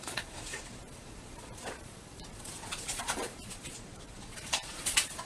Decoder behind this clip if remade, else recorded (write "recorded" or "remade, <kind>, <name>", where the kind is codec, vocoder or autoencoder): remade, vocoder, Vocos